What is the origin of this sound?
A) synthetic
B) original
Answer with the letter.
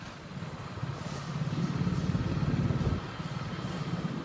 B